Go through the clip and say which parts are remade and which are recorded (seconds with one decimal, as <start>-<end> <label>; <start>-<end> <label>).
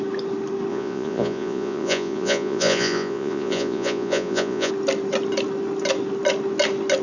0.0-0.7 recorded; 0.7-4.7 remade; 4.7-7.0 recorded